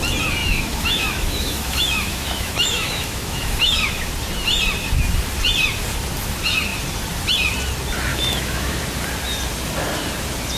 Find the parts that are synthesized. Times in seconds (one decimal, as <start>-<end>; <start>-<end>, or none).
0.4-4.1; 8.1-8.8